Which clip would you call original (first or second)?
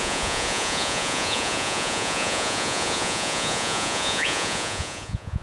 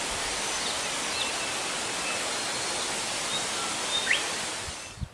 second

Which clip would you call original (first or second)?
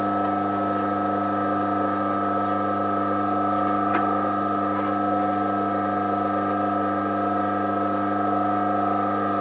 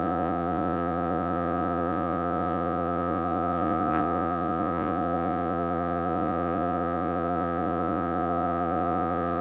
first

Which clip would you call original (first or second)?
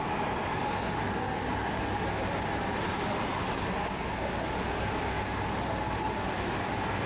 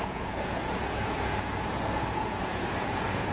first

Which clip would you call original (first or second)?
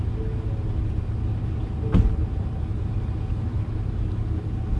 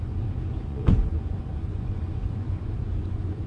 first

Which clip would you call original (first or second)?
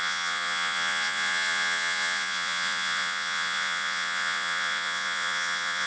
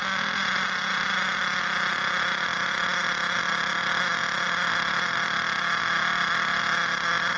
second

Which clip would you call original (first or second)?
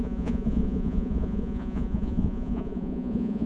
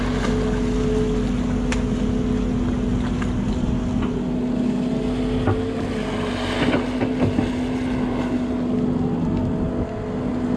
second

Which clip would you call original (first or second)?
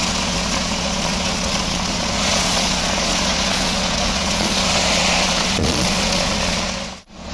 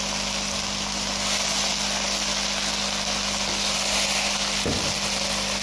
second